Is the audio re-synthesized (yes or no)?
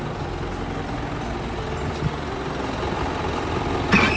no